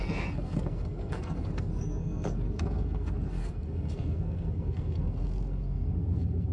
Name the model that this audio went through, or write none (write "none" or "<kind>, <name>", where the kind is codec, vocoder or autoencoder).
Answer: codec, SNAC